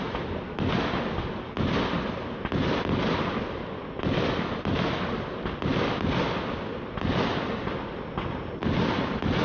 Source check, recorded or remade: recorded